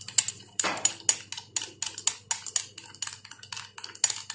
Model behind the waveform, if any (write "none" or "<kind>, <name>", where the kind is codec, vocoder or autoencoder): none